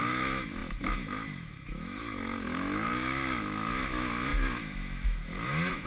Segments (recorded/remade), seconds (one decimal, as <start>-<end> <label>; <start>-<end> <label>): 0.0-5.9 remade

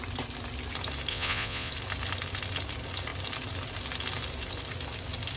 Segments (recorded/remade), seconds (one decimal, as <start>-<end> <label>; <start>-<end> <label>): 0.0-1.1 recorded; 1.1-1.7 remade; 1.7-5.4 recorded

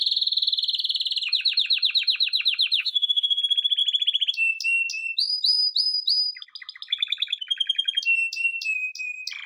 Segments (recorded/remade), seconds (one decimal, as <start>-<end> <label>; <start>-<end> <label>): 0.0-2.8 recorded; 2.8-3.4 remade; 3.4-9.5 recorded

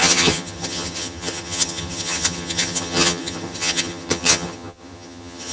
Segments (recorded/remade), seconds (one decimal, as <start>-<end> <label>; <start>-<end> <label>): 0.0-5.5 remade

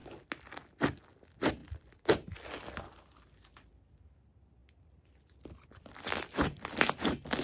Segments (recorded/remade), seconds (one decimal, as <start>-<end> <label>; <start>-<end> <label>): 0.0-7.4 recorded

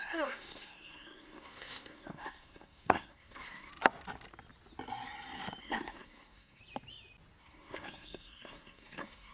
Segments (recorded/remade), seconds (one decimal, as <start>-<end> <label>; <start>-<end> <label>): 0.0-3.7 remade; 3.7-5.6 recorded; 5.6-6.6 remade; 6.6-7.4 recorded; 7.4-9.3 remade

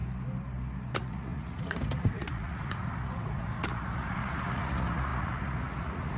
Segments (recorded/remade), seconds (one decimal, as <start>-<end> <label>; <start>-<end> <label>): 0.0-0.9 recorded; 0.9-6.2 remade

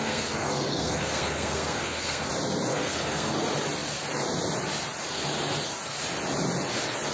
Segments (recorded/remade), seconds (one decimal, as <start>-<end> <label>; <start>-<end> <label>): 0.0-2.3 remade; 2.3-2.7 recorded; 2.7-3.3 remade; 3.3-7.1 recorded